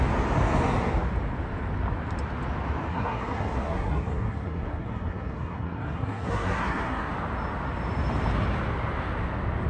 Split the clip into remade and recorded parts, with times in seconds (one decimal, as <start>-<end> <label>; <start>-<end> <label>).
0.0-2.9 recorded; 2.9-7.1 remade; 7.1-9.7 recorded

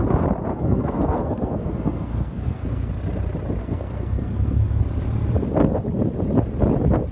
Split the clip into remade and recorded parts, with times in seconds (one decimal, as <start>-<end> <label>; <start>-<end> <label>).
0.0-0.5 recorded; 0.5-2.9 remade; 2.9-3.6 recorded; 3.6-4.8 remade; 4.8-7.1 recorded

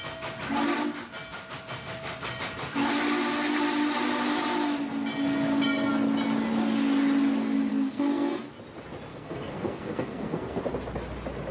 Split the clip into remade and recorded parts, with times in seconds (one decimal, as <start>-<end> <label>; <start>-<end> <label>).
0.0-7.7 recorded; 7.7-8.5 remade; 8.5-9.1 recorded; 9.1-10.6 remade; 10.6-11.5 recorded

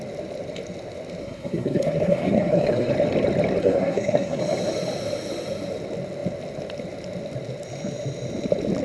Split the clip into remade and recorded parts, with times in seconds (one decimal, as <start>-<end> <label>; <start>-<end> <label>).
0.0-1.2 recorded; 1.2-2.9 remade; 2.9-3.6 recorded; 3.6-4.4 remade; 4.4-8.8 recorded

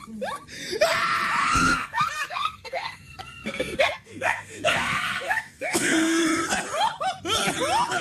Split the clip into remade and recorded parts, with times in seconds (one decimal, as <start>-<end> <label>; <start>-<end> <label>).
0.0-1.4 recorded; 1.4-6.2 remade; 6.2-8.0 recorded